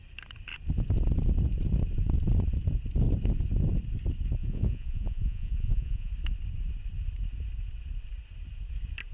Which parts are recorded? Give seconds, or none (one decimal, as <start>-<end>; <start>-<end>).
0.0-4.4; 6.1-9.1